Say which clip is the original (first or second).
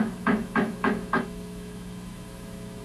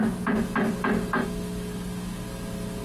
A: second